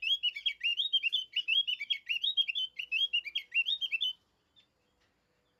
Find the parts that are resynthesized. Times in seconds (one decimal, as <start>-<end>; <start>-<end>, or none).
0.7-2.5